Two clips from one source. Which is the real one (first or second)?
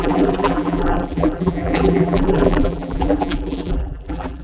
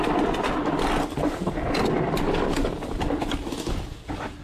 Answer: second